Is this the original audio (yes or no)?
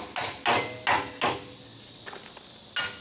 yes